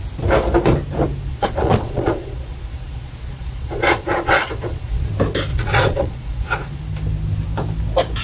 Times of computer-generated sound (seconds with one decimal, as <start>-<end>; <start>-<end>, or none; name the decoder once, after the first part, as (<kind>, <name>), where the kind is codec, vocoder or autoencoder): 1.3-5.1 (vocoder, Vocos); 5.5-6.8